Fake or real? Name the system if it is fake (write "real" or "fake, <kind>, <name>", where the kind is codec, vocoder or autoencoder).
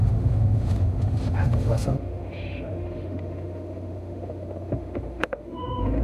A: fake, autoencoder, DAC-VAE